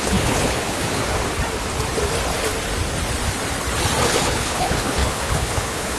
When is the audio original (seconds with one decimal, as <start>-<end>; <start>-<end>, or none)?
1.0-4.0